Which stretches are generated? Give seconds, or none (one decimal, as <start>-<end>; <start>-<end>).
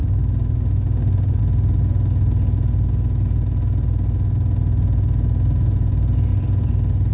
0.0-1.4